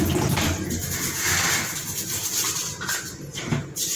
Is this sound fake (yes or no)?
yes